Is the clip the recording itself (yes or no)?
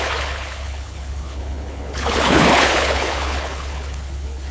no